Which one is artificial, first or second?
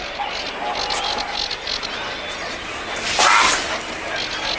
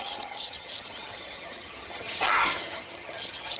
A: second